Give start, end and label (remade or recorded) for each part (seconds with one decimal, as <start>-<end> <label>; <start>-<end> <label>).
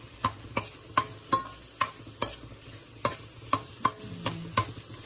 0.0-5.1 recorded